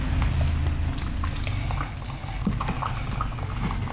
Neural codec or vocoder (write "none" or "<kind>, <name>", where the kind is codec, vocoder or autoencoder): none